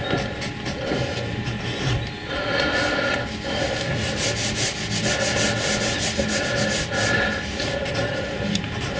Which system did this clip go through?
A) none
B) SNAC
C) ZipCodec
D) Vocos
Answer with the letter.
A